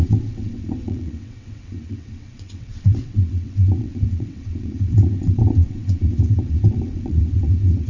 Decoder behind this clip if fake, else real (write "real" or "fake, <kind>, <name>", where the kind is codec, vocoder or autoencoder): fake, vocoder, WaveNeXt